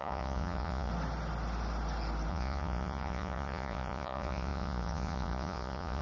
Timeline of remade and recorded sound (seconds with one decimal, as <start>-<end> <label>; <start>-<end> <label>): 0.0-0.9 remade; 0.9-2.3 recorded; 2.3-6.0 remade